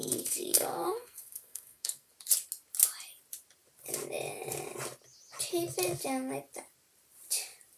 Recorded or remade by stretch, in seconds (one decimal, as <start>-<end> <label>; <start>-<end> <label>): 0.0-2.1 remade; 2.1-7.8 recorded